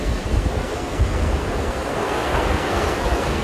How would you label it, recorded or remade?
remade